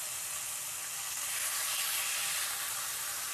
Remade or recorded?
recorded